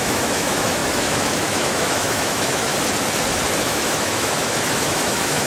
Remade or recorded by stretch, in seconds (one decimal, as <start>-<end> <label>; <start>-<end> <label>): 0.0-2.7 remade; 2.7-3.6 recorded; 3.6-5.5 remade